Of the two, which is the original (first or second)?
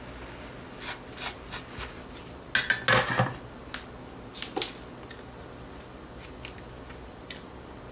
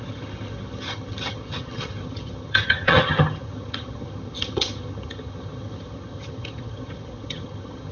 first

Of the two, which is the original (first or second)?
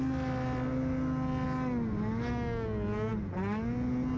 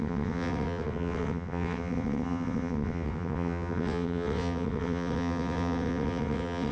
first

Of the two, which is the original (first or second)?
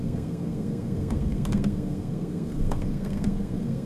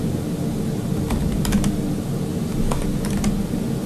second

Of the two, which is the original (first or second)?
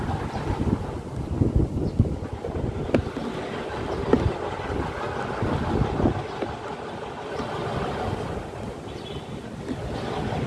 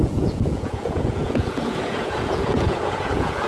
first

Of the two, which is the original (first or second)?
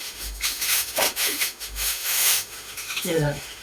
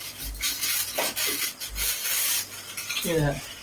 second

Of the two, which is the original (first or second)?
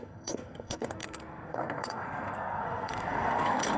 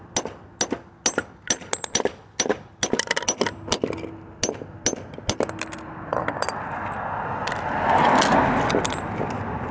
second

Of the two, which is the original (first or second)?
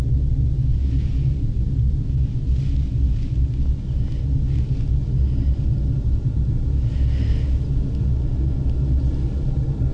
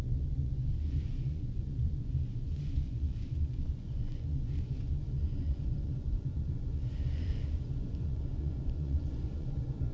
first